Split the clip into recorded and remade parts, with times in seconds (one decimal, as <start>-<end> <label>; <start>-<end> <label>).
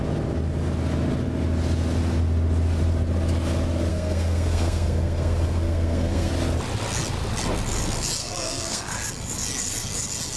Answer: 0.0-3.9 recorded; 3.9-6.3 remade; 6.3-8.2 recorded; 8.2-8.9 remade; 8.9-10.4 recorded